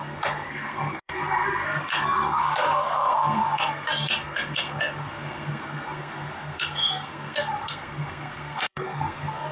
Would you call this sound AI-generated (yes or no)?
yes